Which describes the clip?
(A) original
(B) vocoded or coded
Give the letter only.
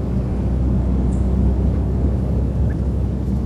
B